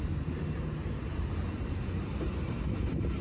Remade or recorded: remade